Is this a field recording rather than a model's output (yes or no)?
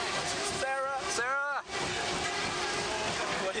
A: yes